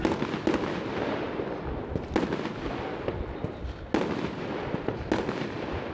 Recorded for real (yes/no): yes